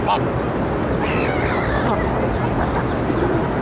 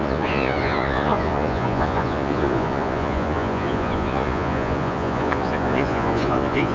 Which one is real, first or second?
first